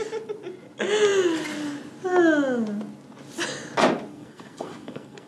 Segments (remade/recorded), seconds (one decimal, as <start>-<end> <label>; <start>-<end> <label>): 0.0-4.1 recorded; 4.1-5.3 remade